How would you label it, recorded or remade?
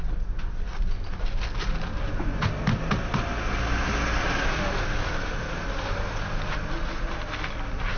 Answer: recorded